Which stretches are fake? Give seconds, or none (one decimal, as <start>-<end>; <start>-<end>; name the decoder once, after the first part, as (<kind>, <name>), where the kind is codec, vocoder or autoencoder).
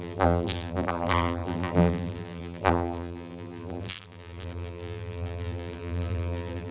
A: 0.0-6.7 (vocoder, BigVGAN v2)